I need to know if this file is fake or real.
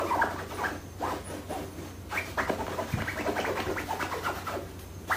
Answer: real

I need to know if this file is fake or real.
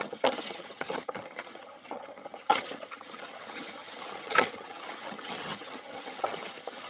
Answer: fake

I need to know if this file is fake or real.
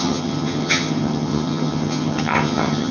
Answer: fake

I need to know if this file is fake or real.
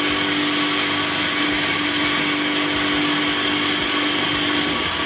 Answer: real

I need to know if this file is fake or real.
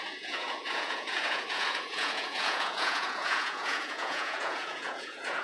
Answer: fake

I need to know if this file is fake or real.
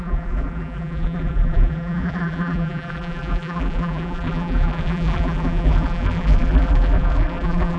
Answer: fake